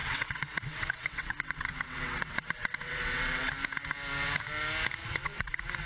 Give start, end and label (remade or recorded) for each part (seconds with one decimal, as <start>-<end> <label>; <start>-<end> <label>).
0.0-3.5 remade; 3.5-5.0 recorded; 5.0-5.5 remade; 5.5-5.9 recorded